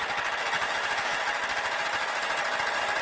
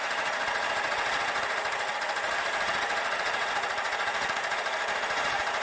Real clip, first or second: first